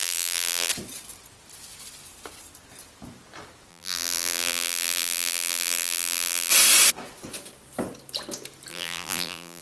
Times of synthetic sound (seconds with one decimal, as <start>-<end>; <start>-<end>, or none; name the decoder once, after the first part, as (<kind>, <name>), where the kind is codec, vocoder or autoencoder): 0.0-0.7 (vocoder, BigVGAN v2); 3.7-6.5; 8.7-9.6